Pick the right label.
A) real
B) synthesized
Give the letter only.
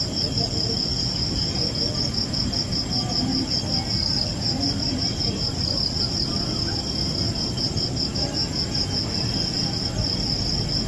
A